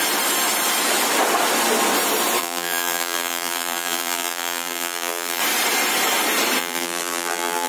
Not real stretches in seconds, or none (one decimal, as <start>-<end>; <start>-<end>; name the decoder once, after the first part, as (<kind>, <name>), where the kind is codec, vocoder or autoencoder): 2.4-5.4 (vocoder, BigVGAN v2); 6.6-7.7